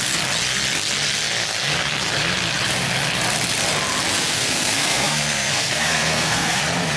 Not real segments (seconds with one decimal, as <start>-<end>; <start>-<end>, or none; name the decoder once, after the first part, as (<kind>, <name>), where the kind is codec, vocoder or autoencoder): 4.1-6.6 (codec, SNAC)